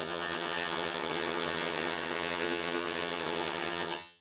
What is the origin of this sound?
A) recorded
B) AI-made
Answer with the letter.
B